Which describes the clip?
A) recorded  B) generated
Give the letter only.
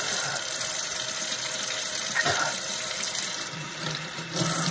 B